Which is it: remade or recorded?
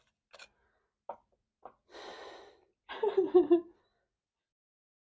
recorded